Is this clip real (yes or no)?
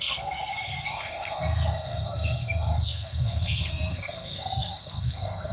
no